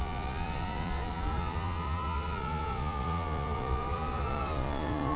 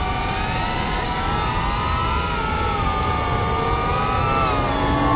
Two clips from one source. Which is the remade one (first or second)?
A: first